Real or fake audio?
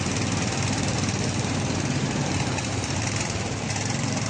fake